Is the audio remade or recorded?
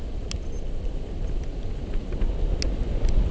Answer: recorded